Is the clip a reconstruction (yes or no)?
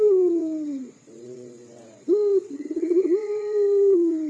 yes